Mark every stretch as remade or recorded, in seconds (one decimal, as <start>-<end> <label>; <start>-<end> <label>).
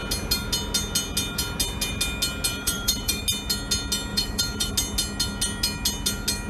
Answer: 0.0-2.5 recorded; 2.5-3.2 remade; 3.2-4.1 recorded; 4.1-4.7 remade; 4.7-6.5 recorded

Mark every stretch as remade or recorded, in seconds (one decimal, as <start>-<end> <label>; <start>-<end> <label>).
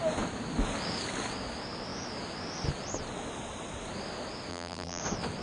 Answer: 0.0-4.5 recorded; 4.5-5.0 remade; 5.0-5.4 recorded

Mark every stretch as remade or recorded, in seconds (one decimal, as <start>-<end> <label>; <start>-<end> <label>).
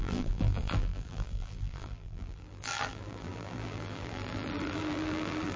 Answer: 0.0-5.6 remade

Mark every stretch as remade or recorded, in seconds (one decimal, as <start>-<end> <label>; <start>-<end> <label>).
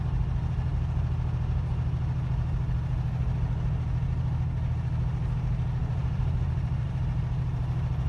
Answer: 0.0-5.8 recorded; 5.8-7.0 remade; 7.0-8.1 recorded